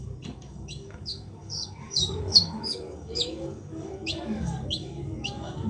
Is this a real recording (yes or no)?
no